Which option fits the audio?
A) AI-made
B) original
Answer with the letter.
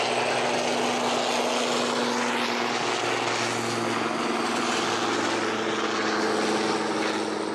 B